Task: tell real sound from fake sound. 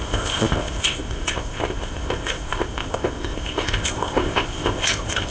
fake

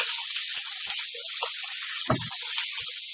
real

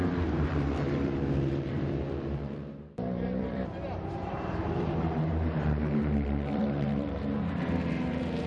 fake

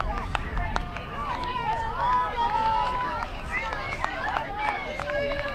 fake